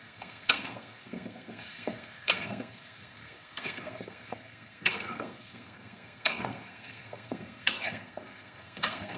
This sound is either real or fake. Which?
fake